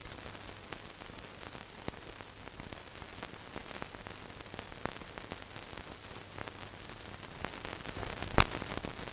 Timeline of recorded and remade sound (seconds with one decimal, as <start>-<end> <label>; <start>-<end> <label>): 0.0-3.6 remade; 3.6-4.2 recorded; 4.2-9.1 remade